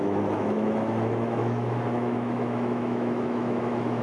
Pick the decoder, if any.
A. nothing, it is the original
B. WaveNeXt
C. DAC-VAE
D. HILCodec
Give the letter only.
C